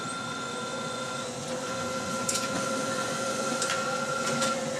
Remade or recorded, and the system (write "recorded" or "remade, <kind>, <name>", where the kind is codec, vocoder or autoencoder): remade, vocoder, Vocos